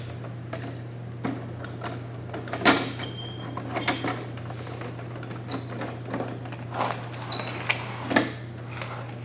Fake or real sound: real